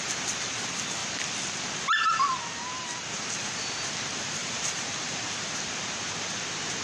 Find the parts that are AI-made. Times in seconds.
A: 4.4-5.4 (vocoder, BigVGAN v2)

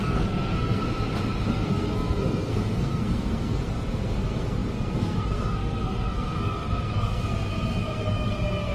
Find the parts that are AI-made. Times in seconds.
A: 0.0-0.8 (codec, SNAC); 1.5-8.7

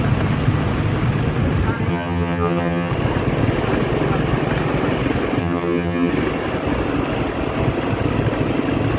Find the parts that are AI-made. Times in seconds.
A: 1.9-2.9 (vocoder, HiFi-GAN); 5.4-6.1